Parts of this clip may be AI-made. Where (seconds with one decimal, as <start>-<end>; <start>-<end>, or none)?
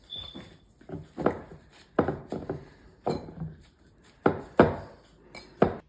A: 1.5-5.0